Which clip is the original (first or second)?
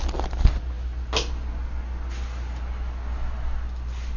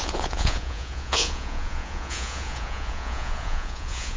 first